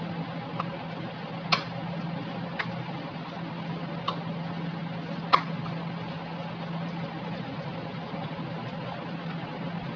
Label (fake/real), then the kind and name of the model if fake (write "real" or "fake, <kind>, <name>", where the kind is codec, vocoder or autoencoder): real